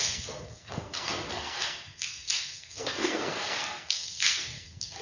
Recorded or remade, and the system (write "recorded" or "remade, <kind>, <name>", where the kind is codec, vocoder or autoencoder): remade, codec, SNAC